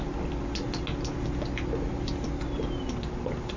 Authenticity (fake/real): real